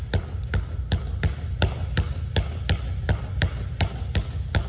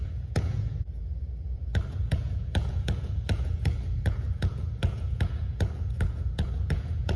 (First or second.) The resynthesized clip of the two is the second